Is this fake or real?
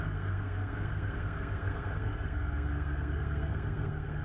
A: fake